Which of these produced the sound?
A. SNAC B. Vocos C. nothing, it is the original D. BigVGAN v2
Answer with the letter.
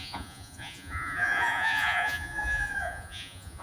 B